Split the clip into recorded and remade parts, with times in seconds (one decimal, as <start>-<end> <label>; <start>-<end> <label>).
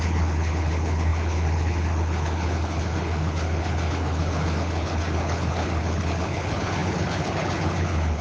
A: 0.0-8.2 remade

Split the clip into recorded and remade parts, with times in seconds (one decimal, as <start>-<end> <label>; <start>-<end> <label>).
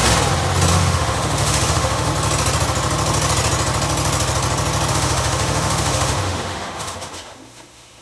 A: 0.0-0.7 recorded; 0.7-2.1 remade; 2.1-4.9 recorded; 4.9-8.0 remade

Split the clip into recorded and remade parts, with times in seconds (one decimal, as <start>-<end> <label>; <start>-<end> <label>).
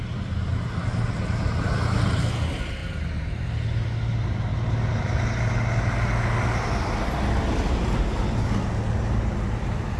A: 0.0-2.8 recorded; 2.8-3.5 remade; 3.5-10.0 recorded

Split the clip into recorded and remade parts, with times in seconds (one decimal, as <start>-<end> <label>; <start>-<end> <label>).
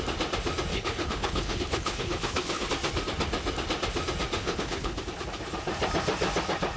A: 0.0-0.7 recorded; 0.7-2.7 remade; 2.7-4.4 recorded; 4.4-5.0 remade; 5.0-6.8 recorded